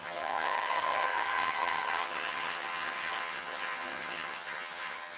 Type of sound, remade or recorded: remade